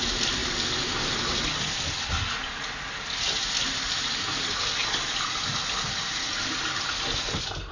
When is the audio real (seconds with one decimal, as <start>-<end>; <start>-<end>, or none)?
0.0-7.7